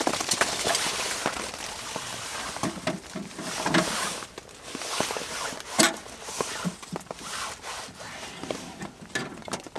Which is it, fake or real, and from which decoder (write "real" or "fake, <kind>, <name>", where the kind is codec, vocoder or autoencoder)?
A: real